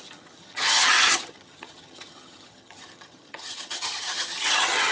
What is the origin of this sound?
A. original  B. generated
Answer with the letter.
B